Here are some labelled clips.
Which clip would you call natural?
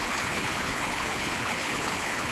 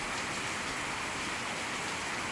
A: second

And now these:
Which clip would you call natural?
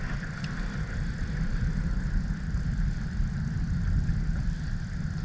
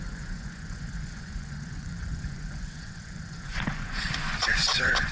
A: first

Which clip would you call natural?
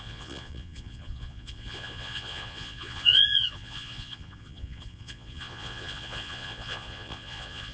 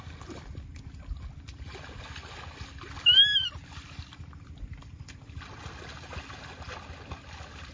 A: second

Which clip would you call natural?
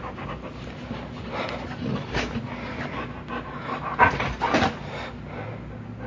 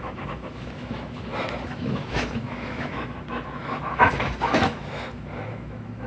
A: first